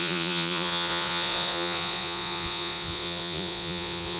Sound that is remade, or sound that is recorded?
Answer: remade